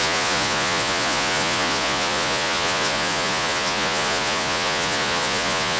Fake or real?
fake